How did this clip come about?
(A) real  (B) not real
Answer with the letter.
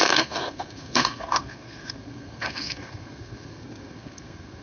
B